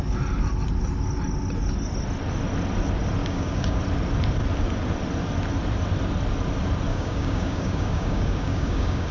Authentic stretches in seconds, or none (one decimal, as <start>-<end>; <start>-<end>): 0.0-3.2; 3.8-6.9